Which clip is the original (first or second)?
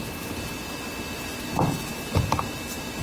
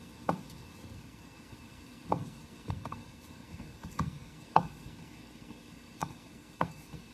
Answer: first